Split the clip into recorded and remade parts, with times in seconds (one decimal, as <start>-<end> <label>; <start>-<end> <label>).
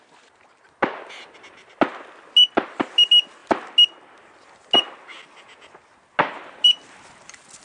0.0-7.6 recorded